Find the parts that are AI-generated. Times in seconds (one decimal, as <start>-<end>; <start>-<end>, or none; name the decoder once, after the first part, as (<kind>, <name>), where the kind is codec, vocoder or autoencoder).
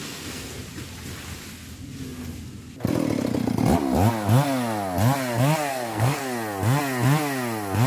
0.0-0.5 (codec, SNAC); 5.7-6.2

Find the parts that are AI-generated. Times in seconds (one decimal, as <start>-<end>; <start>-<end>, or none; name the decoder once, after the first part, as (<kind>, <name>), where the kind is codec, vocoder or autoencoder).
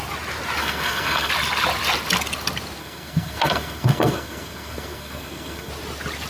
0.6-1.3 (codec, SNAC); 2.8-5.7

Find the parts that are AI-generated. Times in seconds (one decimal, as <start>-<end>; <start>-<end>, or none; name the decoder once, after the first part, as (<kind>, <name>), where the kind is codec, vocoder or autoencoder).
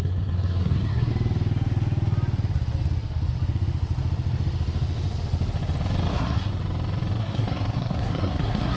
0.0-1.1 (codec, SNAC); 6.1-6.5; 7.2-8.8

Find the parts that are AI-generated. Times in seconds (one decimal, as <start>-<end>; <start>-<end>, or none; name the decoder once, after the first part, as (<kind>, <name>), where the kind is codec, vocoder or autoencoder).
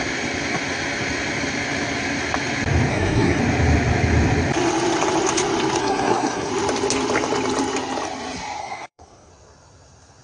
2.9-3.4 (codec, SNAC); 5.8-6.5; 8.6-9.3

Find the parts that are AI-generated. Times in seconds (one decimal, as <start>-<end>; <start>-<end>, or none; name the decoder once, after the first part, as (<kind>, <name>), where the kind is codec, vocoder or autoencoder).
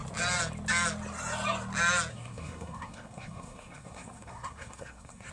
2.1-5.3 (codec, SNAC)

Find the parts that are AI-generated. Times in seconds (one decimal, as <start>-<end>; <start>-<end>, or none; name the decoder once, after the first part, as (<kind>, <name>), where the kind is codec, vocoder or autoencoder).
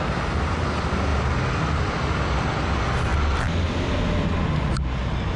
none